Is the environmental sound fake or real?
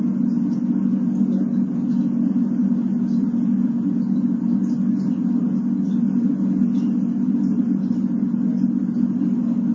real